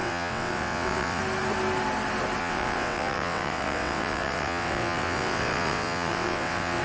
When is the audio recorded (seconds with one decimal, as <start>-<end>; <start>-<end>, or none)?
1.2-2.4